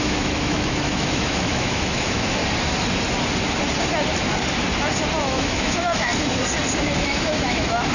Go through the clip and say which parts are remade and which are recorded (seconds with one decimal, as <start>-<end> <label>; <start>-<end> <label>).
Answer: 0.0-2.4 remade; 2.4-5.2 recorded; 5.2-6.1 remade; 6.1-6.8 recorded; 6.8-7.9 remade